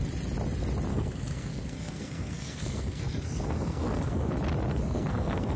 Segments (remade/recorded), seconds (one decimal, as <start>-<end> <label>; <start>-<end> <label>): 0.0-0.9 recorded; 0.9-4.3 remade; 4.3-4.7 recorded; 4.7-5.6 remade